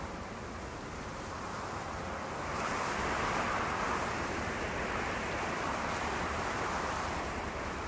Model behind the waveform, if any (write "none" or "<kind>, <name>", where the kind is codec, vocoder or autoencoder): none